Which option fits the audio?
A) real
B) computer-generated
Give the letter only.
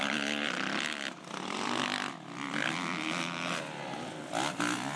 A